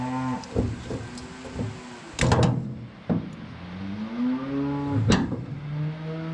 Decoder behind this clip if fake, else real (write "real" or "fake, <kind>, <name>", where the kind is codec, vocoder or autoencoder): real